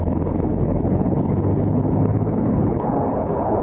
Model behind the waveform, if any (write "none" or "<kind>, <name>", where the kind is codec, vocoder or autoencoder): codec, HILCodec